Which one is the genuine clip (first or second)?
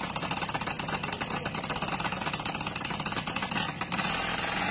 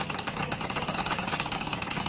first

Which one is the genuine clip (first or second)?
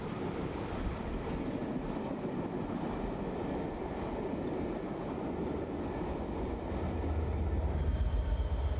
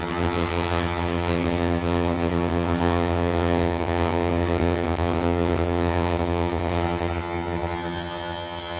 first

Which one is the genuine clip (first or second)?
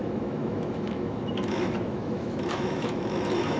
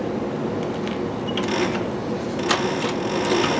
second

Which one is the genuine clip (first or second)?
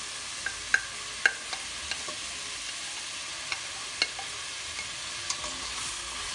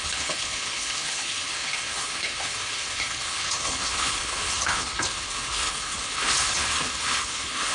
first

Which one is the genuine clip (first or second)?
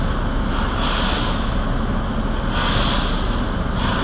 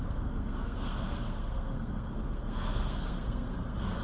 first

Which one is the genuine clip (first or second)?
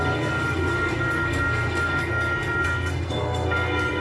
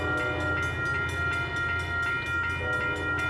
second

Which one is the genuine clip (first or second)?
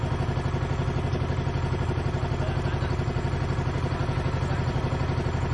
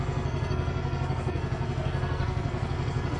first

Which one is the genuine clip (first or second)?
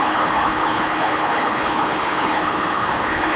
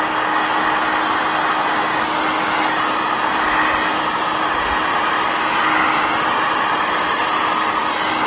second